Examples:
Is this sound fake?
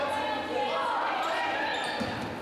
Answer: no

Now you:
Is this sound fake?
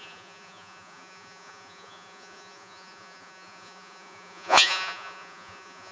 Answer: yes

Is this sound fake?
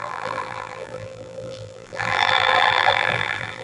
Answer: yes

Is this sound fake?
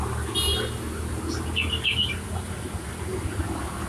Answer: no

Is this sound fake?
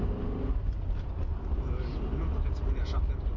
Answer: no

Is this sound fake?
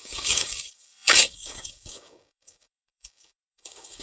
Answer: yes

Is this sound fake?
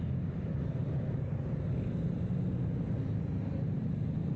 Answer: no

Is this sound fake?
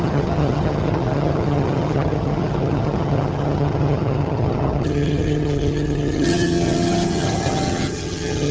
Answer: yes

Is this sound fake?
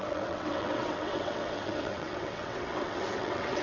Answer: yes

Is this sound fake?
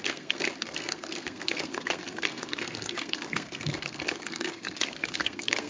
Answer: yes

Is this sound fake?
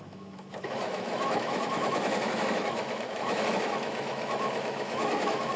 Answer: yes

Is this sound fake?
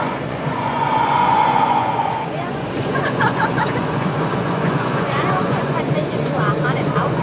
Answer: yes